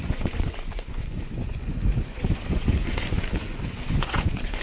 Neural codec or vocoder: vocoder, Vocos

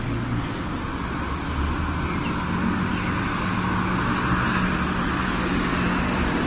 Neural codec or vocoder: none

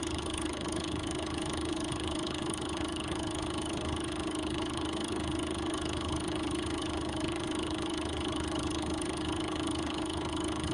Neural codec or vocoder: codec, HILCodec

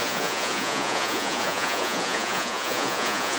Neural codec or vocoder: vocoder, Vocos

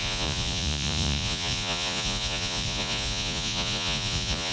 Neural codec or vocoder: vocoder, Vocos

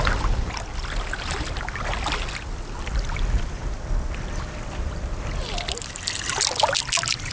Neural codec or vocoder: none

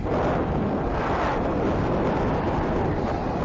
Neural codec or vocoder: none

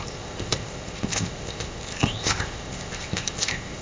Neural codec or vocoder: codec, ZipCodec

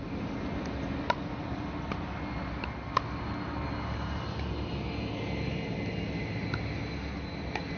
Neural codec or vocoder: none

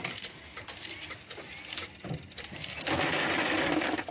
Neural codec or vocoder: none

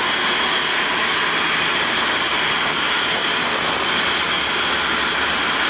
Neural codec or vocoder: none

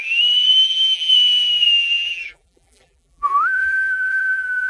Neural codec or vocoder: vocoder, BigVGAN v2